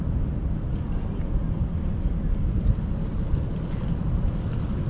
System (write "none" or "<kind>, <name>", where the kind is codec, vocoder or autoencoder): none